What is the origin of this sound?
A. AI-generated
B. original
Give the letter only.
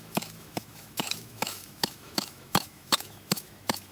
A